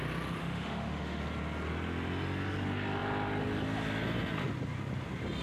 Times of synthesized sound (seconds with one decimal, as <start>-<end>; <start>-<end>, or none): 0.4-1.2